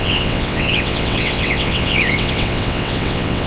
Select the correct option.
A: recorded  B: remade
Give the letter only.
B